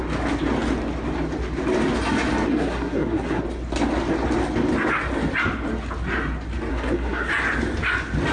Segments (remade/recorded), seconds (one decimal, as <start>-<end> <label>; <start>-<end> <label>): 0.0-2.5 recorded; 2.5-3.4 remade; 3.4-6.7 recorded; 6.7-7.3 remade; 7.3-8.3 recorded